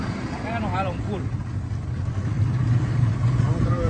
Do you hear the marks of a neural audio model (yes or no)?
no